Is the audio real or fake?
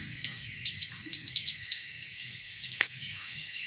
fake